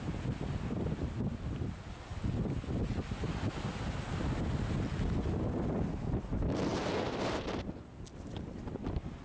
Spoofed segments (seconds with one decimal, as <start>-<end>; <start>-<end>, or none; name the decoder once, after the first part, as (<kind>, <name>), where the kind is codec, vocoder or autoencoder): none